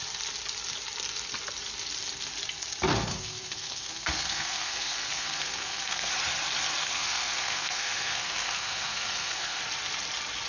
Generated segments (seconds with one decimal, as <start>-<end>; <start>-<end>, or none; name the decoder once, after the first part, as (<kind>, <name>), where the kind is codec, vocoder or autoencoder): 2.9-6.1 (codec, SNAC); 6.8-9.6

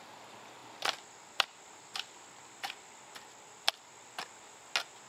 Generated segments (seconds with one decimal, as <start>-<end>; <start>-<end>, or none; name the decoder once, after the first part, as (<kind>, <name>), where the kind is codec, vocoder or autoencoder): none

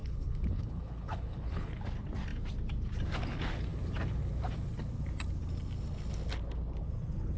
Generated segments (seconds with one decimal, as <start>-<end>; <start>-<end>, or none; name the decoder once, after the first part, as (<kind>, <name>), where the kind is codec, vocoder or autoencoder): 0.0-1.8 (codec, HILCodec)

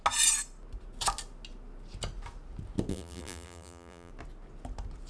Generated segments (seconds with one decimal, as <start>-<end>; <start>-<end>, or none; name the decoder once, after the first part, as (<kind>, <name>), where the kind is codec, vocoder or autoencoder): 2.9-4.1 (vocoder, BigVGAN v2)